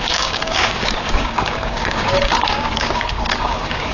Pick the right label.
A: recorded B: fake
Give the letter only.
B